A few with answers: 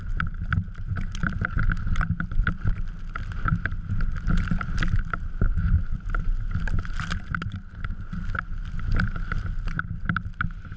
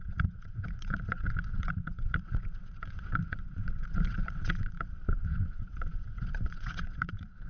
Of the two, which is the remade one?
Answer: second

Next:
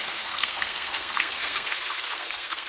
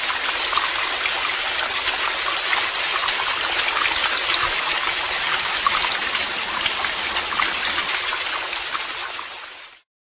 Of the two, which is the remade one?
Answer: first